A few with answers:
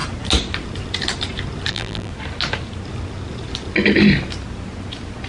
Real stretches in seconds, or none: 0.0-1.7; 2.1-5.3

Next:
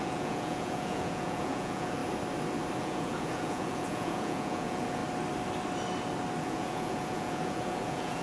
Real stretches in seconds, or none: 2.0-2.8; 5.0-6.4

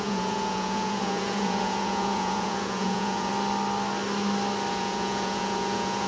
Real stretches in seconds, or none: 3.3-4.7

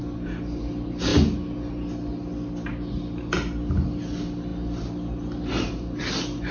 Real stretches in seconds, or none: 0.0-6.5

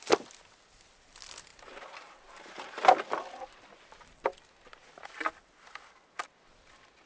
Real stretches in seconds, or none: 0.0-7.1

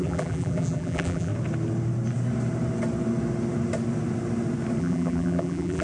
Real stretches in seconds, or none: 1.3-4.8